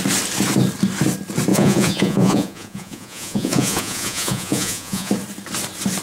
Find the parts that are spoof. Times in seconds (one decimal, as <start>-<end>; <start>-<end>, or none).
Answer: 1.5-5.1